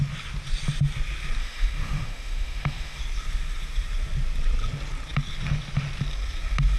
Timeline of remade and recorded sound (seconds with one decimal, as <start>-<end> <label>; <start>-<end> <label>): 0.0-1.4 recorded; 1.4-3.0 remade; 3.0-6.8 recorded